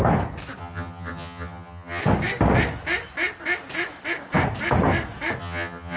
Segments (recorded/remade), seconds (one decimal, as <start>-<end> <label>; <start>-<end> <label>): 0.0-0.6 recorded; 0.6-2.0 remade; 2.0-5.4 recorded; 5.4-6.0 remade